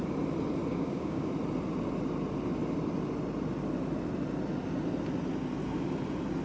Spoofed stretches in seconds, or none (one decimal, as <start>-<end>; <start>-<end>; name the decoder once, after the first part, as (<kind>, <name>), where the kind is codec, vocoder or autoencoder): 0.7-1.3 (codec, DAC)